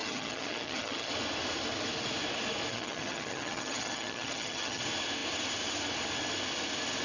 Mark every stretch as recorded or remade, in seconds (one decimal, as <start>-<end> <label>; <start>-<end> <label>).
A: 0.0-1.1 remade; 1.1-2.7 recorded; 2.7-4.8 remade; 4.8-7.0 recorded